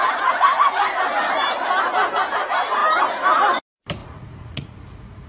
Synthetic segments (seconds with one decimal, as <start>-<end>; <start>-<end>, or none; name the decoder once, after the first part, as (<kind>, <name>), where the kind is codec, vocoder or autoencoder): 4.0-5.3 (vocoder, Vocos)